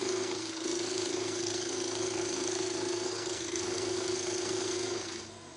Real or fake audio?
fake